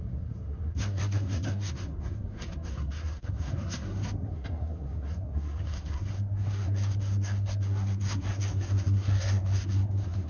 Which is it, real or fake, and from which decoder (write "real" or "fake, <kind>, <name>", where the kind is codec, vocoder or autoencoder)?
fake, codec, SNAC